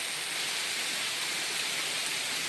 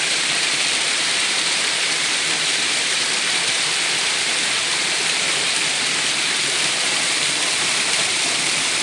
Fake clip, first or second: second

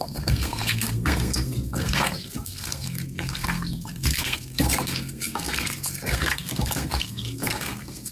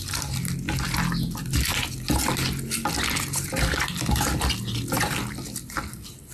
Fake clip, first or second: first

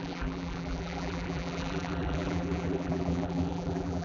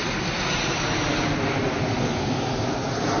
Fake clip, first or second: first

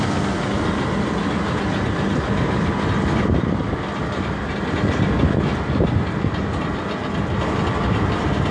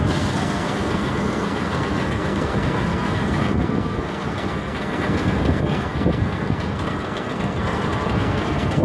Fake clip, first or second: second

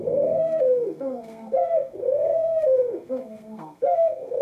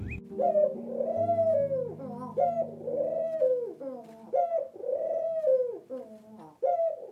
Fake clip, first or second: first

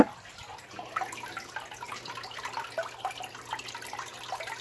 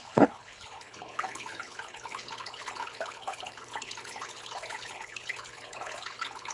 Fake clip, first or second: second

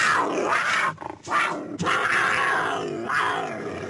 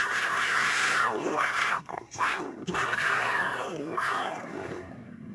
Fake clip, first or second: second